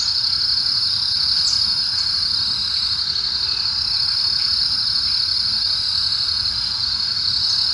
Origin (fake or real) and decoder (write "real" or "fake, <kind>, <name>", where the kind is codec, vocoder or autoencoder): real